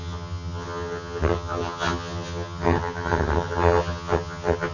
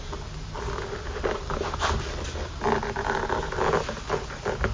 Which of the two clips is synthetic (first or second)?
first